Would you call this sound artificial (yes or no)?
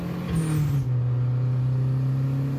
no